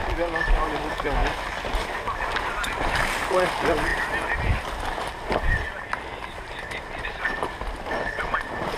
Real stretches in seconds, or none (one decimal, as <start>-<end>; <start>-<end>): 1.2-2.4; 3.9-5.0